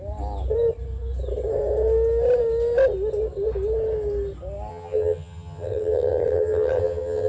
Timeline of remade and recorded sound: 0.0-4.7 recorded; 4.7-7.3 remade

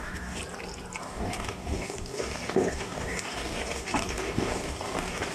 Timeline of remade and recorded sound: 0.0-0.4 remade; 0.4-1.0 recorded; 1.0-5.3 remade

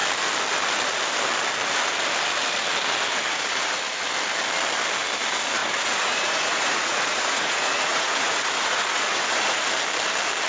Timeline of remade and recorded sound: 0.0-5.6 recorded; 5.6-9.6 remade; 9.6-10.5 recorded